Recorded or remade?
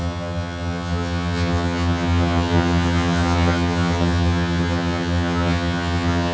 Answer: remade